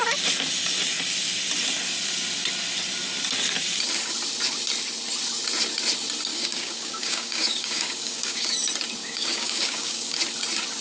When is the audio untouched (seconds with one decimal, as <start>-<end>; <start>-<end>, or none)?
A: 0.0-6.3; 8.5-9.0; 10.2-10.8